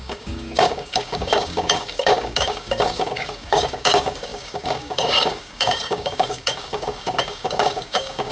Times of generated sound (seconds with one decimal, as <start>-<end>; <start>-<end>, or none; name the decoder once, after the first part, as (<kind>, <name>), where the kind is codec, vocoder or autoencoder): 0.0-8.3 (codec, DAC)